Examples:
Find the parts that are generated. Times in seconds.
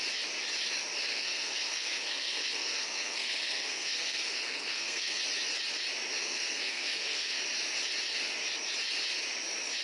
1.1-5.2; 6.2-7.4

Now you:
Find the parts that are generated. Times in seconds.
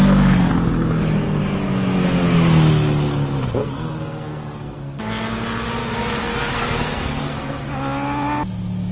0.0-0.5; 3.6-5.0; 5.8-7.7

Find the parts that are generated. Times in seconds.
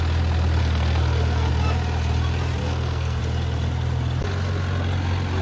0.6-1.5; 2.6-3.2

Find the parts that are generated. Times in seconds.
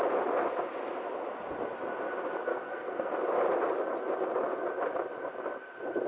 2.5-3.1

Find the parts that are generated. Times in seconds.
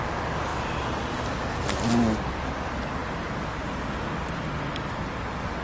none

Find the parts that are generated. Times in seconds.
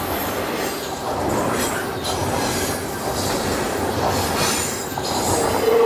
none